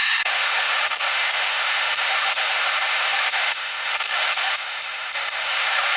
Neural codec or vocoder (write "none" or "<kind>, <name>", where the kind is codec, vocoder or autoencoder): autoencoder, DAC-VAE